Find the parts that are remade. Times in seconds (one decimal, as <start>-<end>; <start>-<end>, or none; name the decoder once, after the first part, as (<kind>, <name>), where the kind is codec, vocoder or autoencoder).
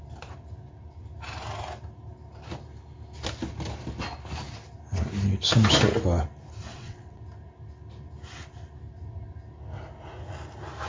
6.7-7.2 (vocoder, WaveNeXt)